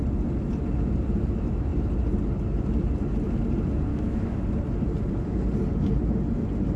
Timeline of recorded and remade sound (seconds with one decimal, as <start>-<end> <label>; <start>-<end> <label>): 0.0-3.9 recorded; 3.9-4.4 remade; 4.4-6.8 recorded